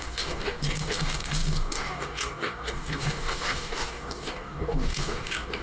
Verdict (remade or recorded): remade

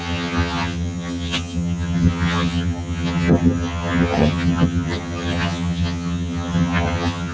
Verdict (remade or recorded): remade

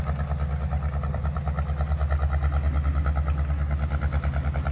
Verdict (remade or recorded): recorded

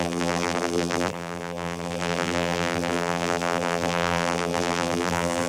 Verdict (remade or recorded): remade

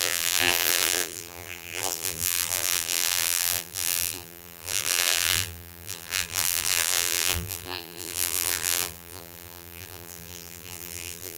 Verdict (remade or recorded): remade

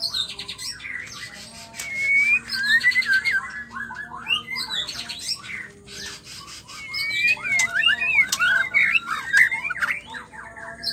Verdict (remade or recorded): recorded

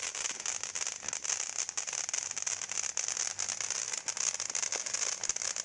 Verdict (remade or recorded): recorded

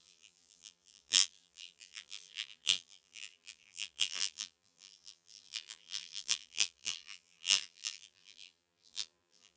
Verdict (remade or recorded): remade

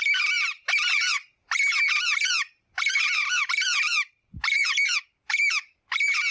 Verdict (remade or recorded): recorded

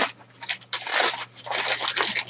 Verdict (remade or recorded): recorded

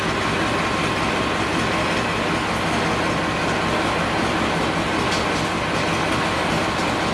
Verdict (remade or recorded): recorded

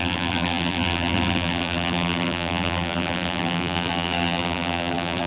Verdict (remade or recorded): remade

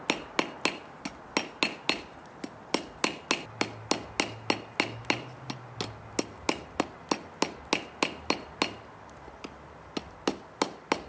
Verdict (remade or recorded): recorded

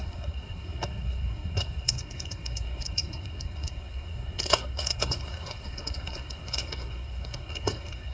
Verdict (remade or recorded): remade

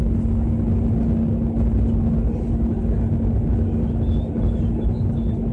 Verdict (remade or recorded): recorded